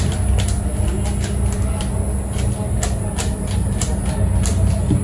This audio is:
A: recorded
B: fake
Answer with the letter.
A